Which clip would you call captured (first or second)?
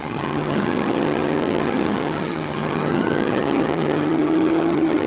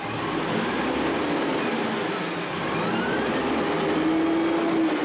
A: second